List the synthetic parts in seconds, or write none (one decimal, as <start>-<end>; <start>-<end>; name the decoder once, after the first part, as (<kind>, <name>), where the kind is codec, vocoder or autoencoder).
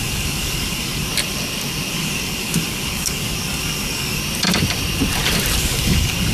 0.0-1.1 (codec, DAC); 1.9-4.2; 5.6-6.3